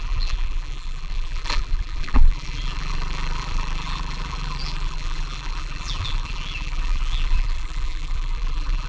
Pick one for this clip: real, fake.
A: fake